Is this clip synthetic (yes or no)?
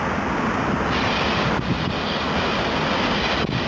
no